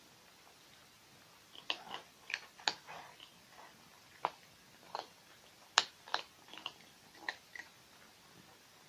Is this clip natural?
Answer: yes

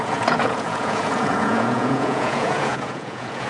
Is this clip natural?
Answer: no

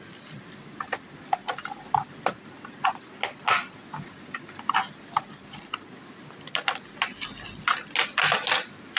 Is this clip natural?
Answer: yes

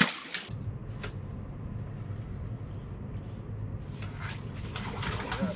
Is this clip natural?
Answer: yes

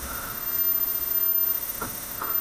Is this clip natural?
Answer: no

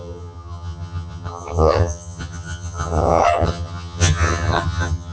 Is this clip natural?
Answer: no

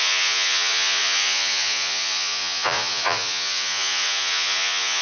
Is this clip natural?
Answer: no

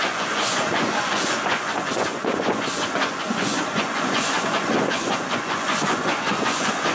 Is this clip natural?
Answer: no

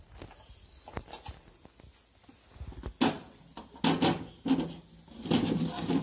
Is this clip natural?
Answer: yes